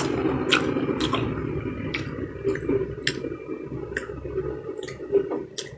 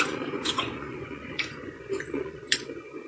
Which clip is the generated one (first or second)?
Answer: second